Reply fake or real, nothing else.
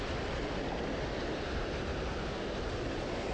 real